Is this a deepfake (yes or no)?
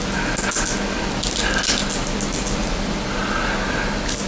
no